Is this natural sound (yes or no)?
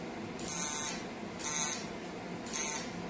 yes